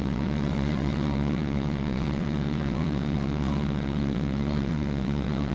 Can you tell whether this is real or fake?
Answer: fake